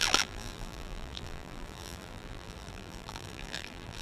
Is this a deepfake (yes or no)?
yes